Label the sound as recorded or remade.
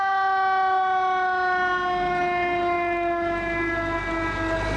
recorded